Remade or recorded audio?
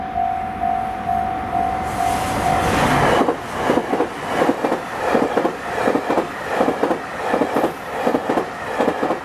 recorded